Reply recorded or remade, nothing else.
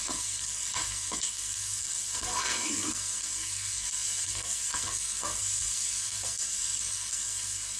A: remade